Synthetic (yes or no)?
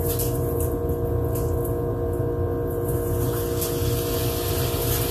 no